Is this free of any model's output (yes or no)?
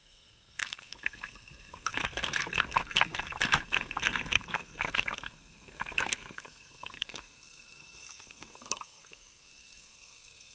no